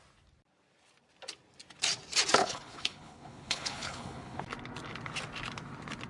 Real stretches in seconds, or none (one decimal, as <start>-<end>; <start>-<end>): 0.0-2.4; 4.4-6.1